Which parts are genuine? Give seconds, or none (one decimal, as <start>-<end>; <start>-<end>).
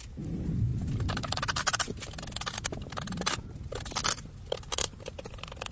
0.0-5.7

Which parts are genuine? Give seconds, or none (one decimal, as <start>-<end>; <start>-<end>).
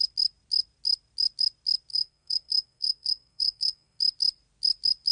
0.0-1.9; 4.0-5.1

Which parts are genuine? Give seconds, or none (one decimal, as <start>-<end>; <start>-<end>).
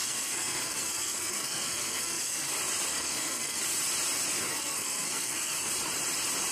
2.5-2.9; 3.6-4.5; 5.7-6.5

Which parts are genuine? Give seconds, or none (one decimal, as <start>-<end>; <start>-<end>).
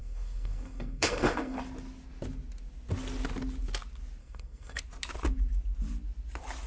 1.6-4.2; 4.8-6.7